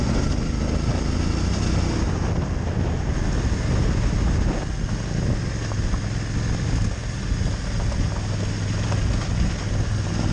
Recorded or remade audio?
recorded